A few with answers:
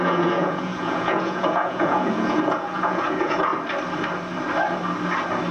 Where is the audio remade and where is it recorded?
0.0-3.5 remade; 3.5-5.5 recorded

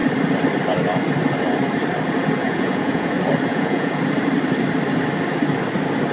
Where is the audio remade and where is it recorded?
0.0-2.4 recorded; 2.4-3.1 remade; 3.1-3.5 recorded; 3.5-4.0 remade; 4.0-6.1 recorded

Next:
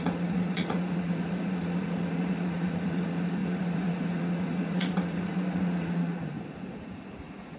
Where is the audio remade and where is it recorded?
0.0-7.6 remade

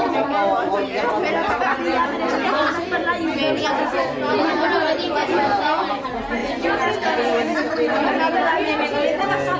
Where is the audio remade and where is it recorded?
0.0-9.6 recorded